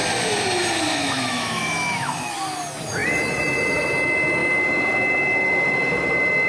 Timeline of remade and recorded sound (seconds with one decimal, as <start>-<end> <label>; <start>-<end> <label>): 0.0-0.9 recorded; 0.9-2.3 remade; 2.3-6.5 recorded